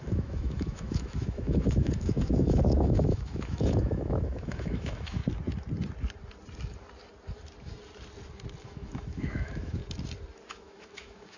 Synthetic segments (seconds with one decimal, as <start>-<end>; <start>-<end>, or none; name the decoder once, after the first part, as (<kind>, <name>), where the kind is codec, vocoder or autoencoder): 0.0-5.2 (autoencoder, DAC-VAE); 8.6-9.8; 10.5-11.4